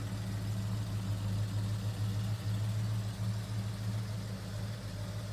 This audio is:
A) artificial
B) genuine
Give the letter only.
B